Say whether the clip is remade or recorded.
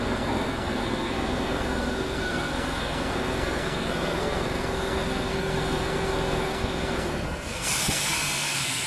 remade